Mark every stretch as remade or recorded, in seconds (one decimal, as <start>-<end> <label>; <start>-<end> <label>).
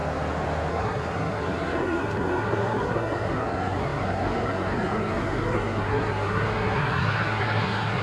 0.0-0.7 recorded; 0.7-8.0 remade